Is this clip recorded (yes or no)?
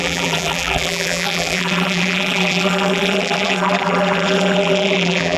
no